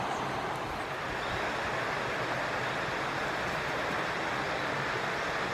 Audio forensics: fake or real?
real